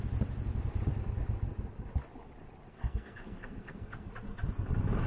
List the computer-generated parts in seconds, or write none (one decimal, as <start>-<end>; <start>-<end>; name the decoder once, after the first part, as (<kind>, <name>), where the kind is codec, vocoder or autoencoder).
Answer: 2.7-4.1 (codec, SNAC)